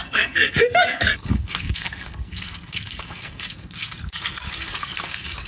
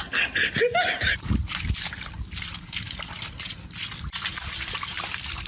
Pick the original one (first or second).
second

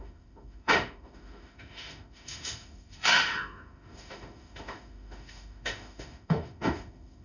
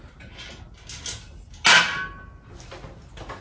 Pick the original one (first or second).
second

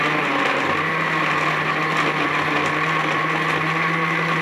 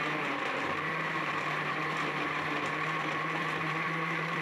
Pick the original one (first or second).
first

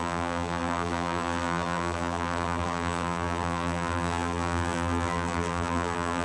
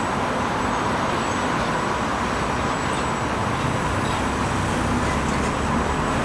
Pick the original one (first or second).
second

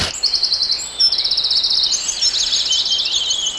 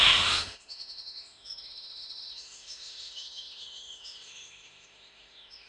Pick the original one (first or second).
first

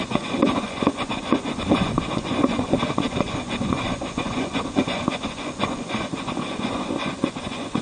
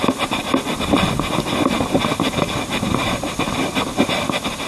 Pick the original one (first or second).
second